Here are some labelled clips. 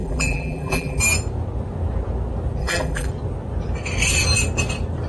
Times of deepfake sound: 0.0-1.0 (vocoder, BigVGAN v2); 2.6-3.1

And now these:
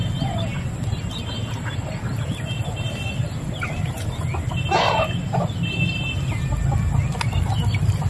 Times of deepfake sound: none

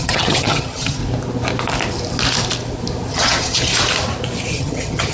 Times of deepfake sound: 0.0-1.0 (vocoder, HiFi-GAN); 3.1-3.7; 4.5-5.1

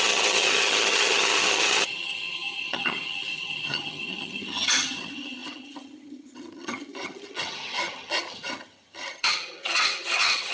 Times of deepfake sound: 0.0-10.5 (vocoder, HiFi-GAN)

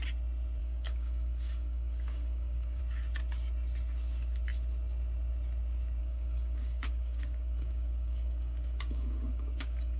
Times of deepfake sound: 0.6-2.8 (codec, DAC); 6.0-10.0